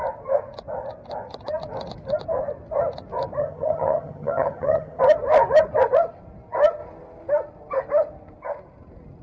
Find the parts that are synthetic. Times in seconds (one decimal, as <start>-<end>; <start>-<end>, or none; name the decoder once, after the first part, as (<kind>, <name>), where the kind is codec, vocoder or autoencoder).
3.4-5.0 (vocoder, HiFi-GAN)